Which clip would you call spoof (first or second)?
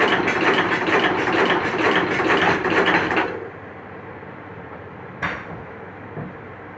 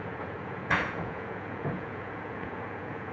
second